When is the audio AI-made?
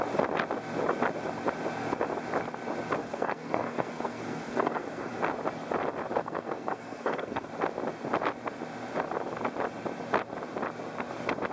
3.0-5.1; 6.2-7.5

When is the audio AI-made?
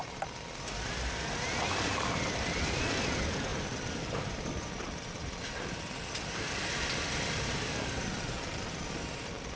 1.9-9.6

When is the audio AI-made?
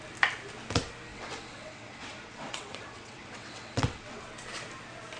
1.1-4.2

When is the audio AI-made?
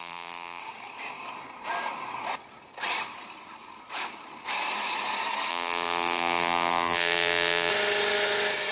0.0-0.6; 5.5-7.7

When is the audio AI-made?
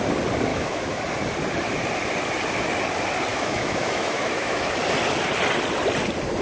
0.5-1.0; 3.3-4.8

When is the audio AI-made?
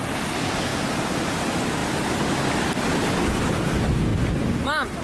none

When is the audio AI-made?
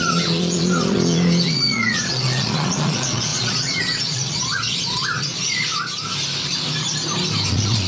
0.0-5.7; 7.5-7.9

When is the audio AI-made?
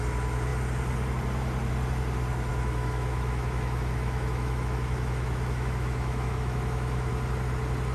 2.5-7.1